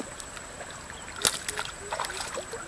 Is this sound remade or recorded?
recorded